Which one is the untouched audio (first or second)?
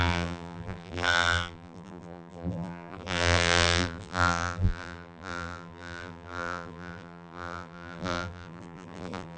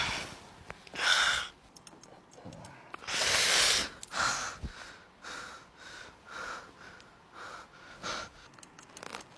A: second